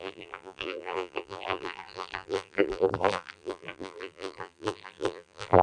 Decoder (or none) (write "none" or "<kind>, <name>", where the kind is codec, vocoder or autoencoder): vocoder, BigVGAN v2